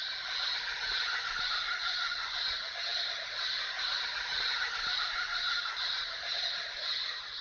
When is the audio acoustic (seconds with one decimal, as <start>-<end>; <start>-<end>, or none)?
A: 0.0-1.8; 2.4-7.4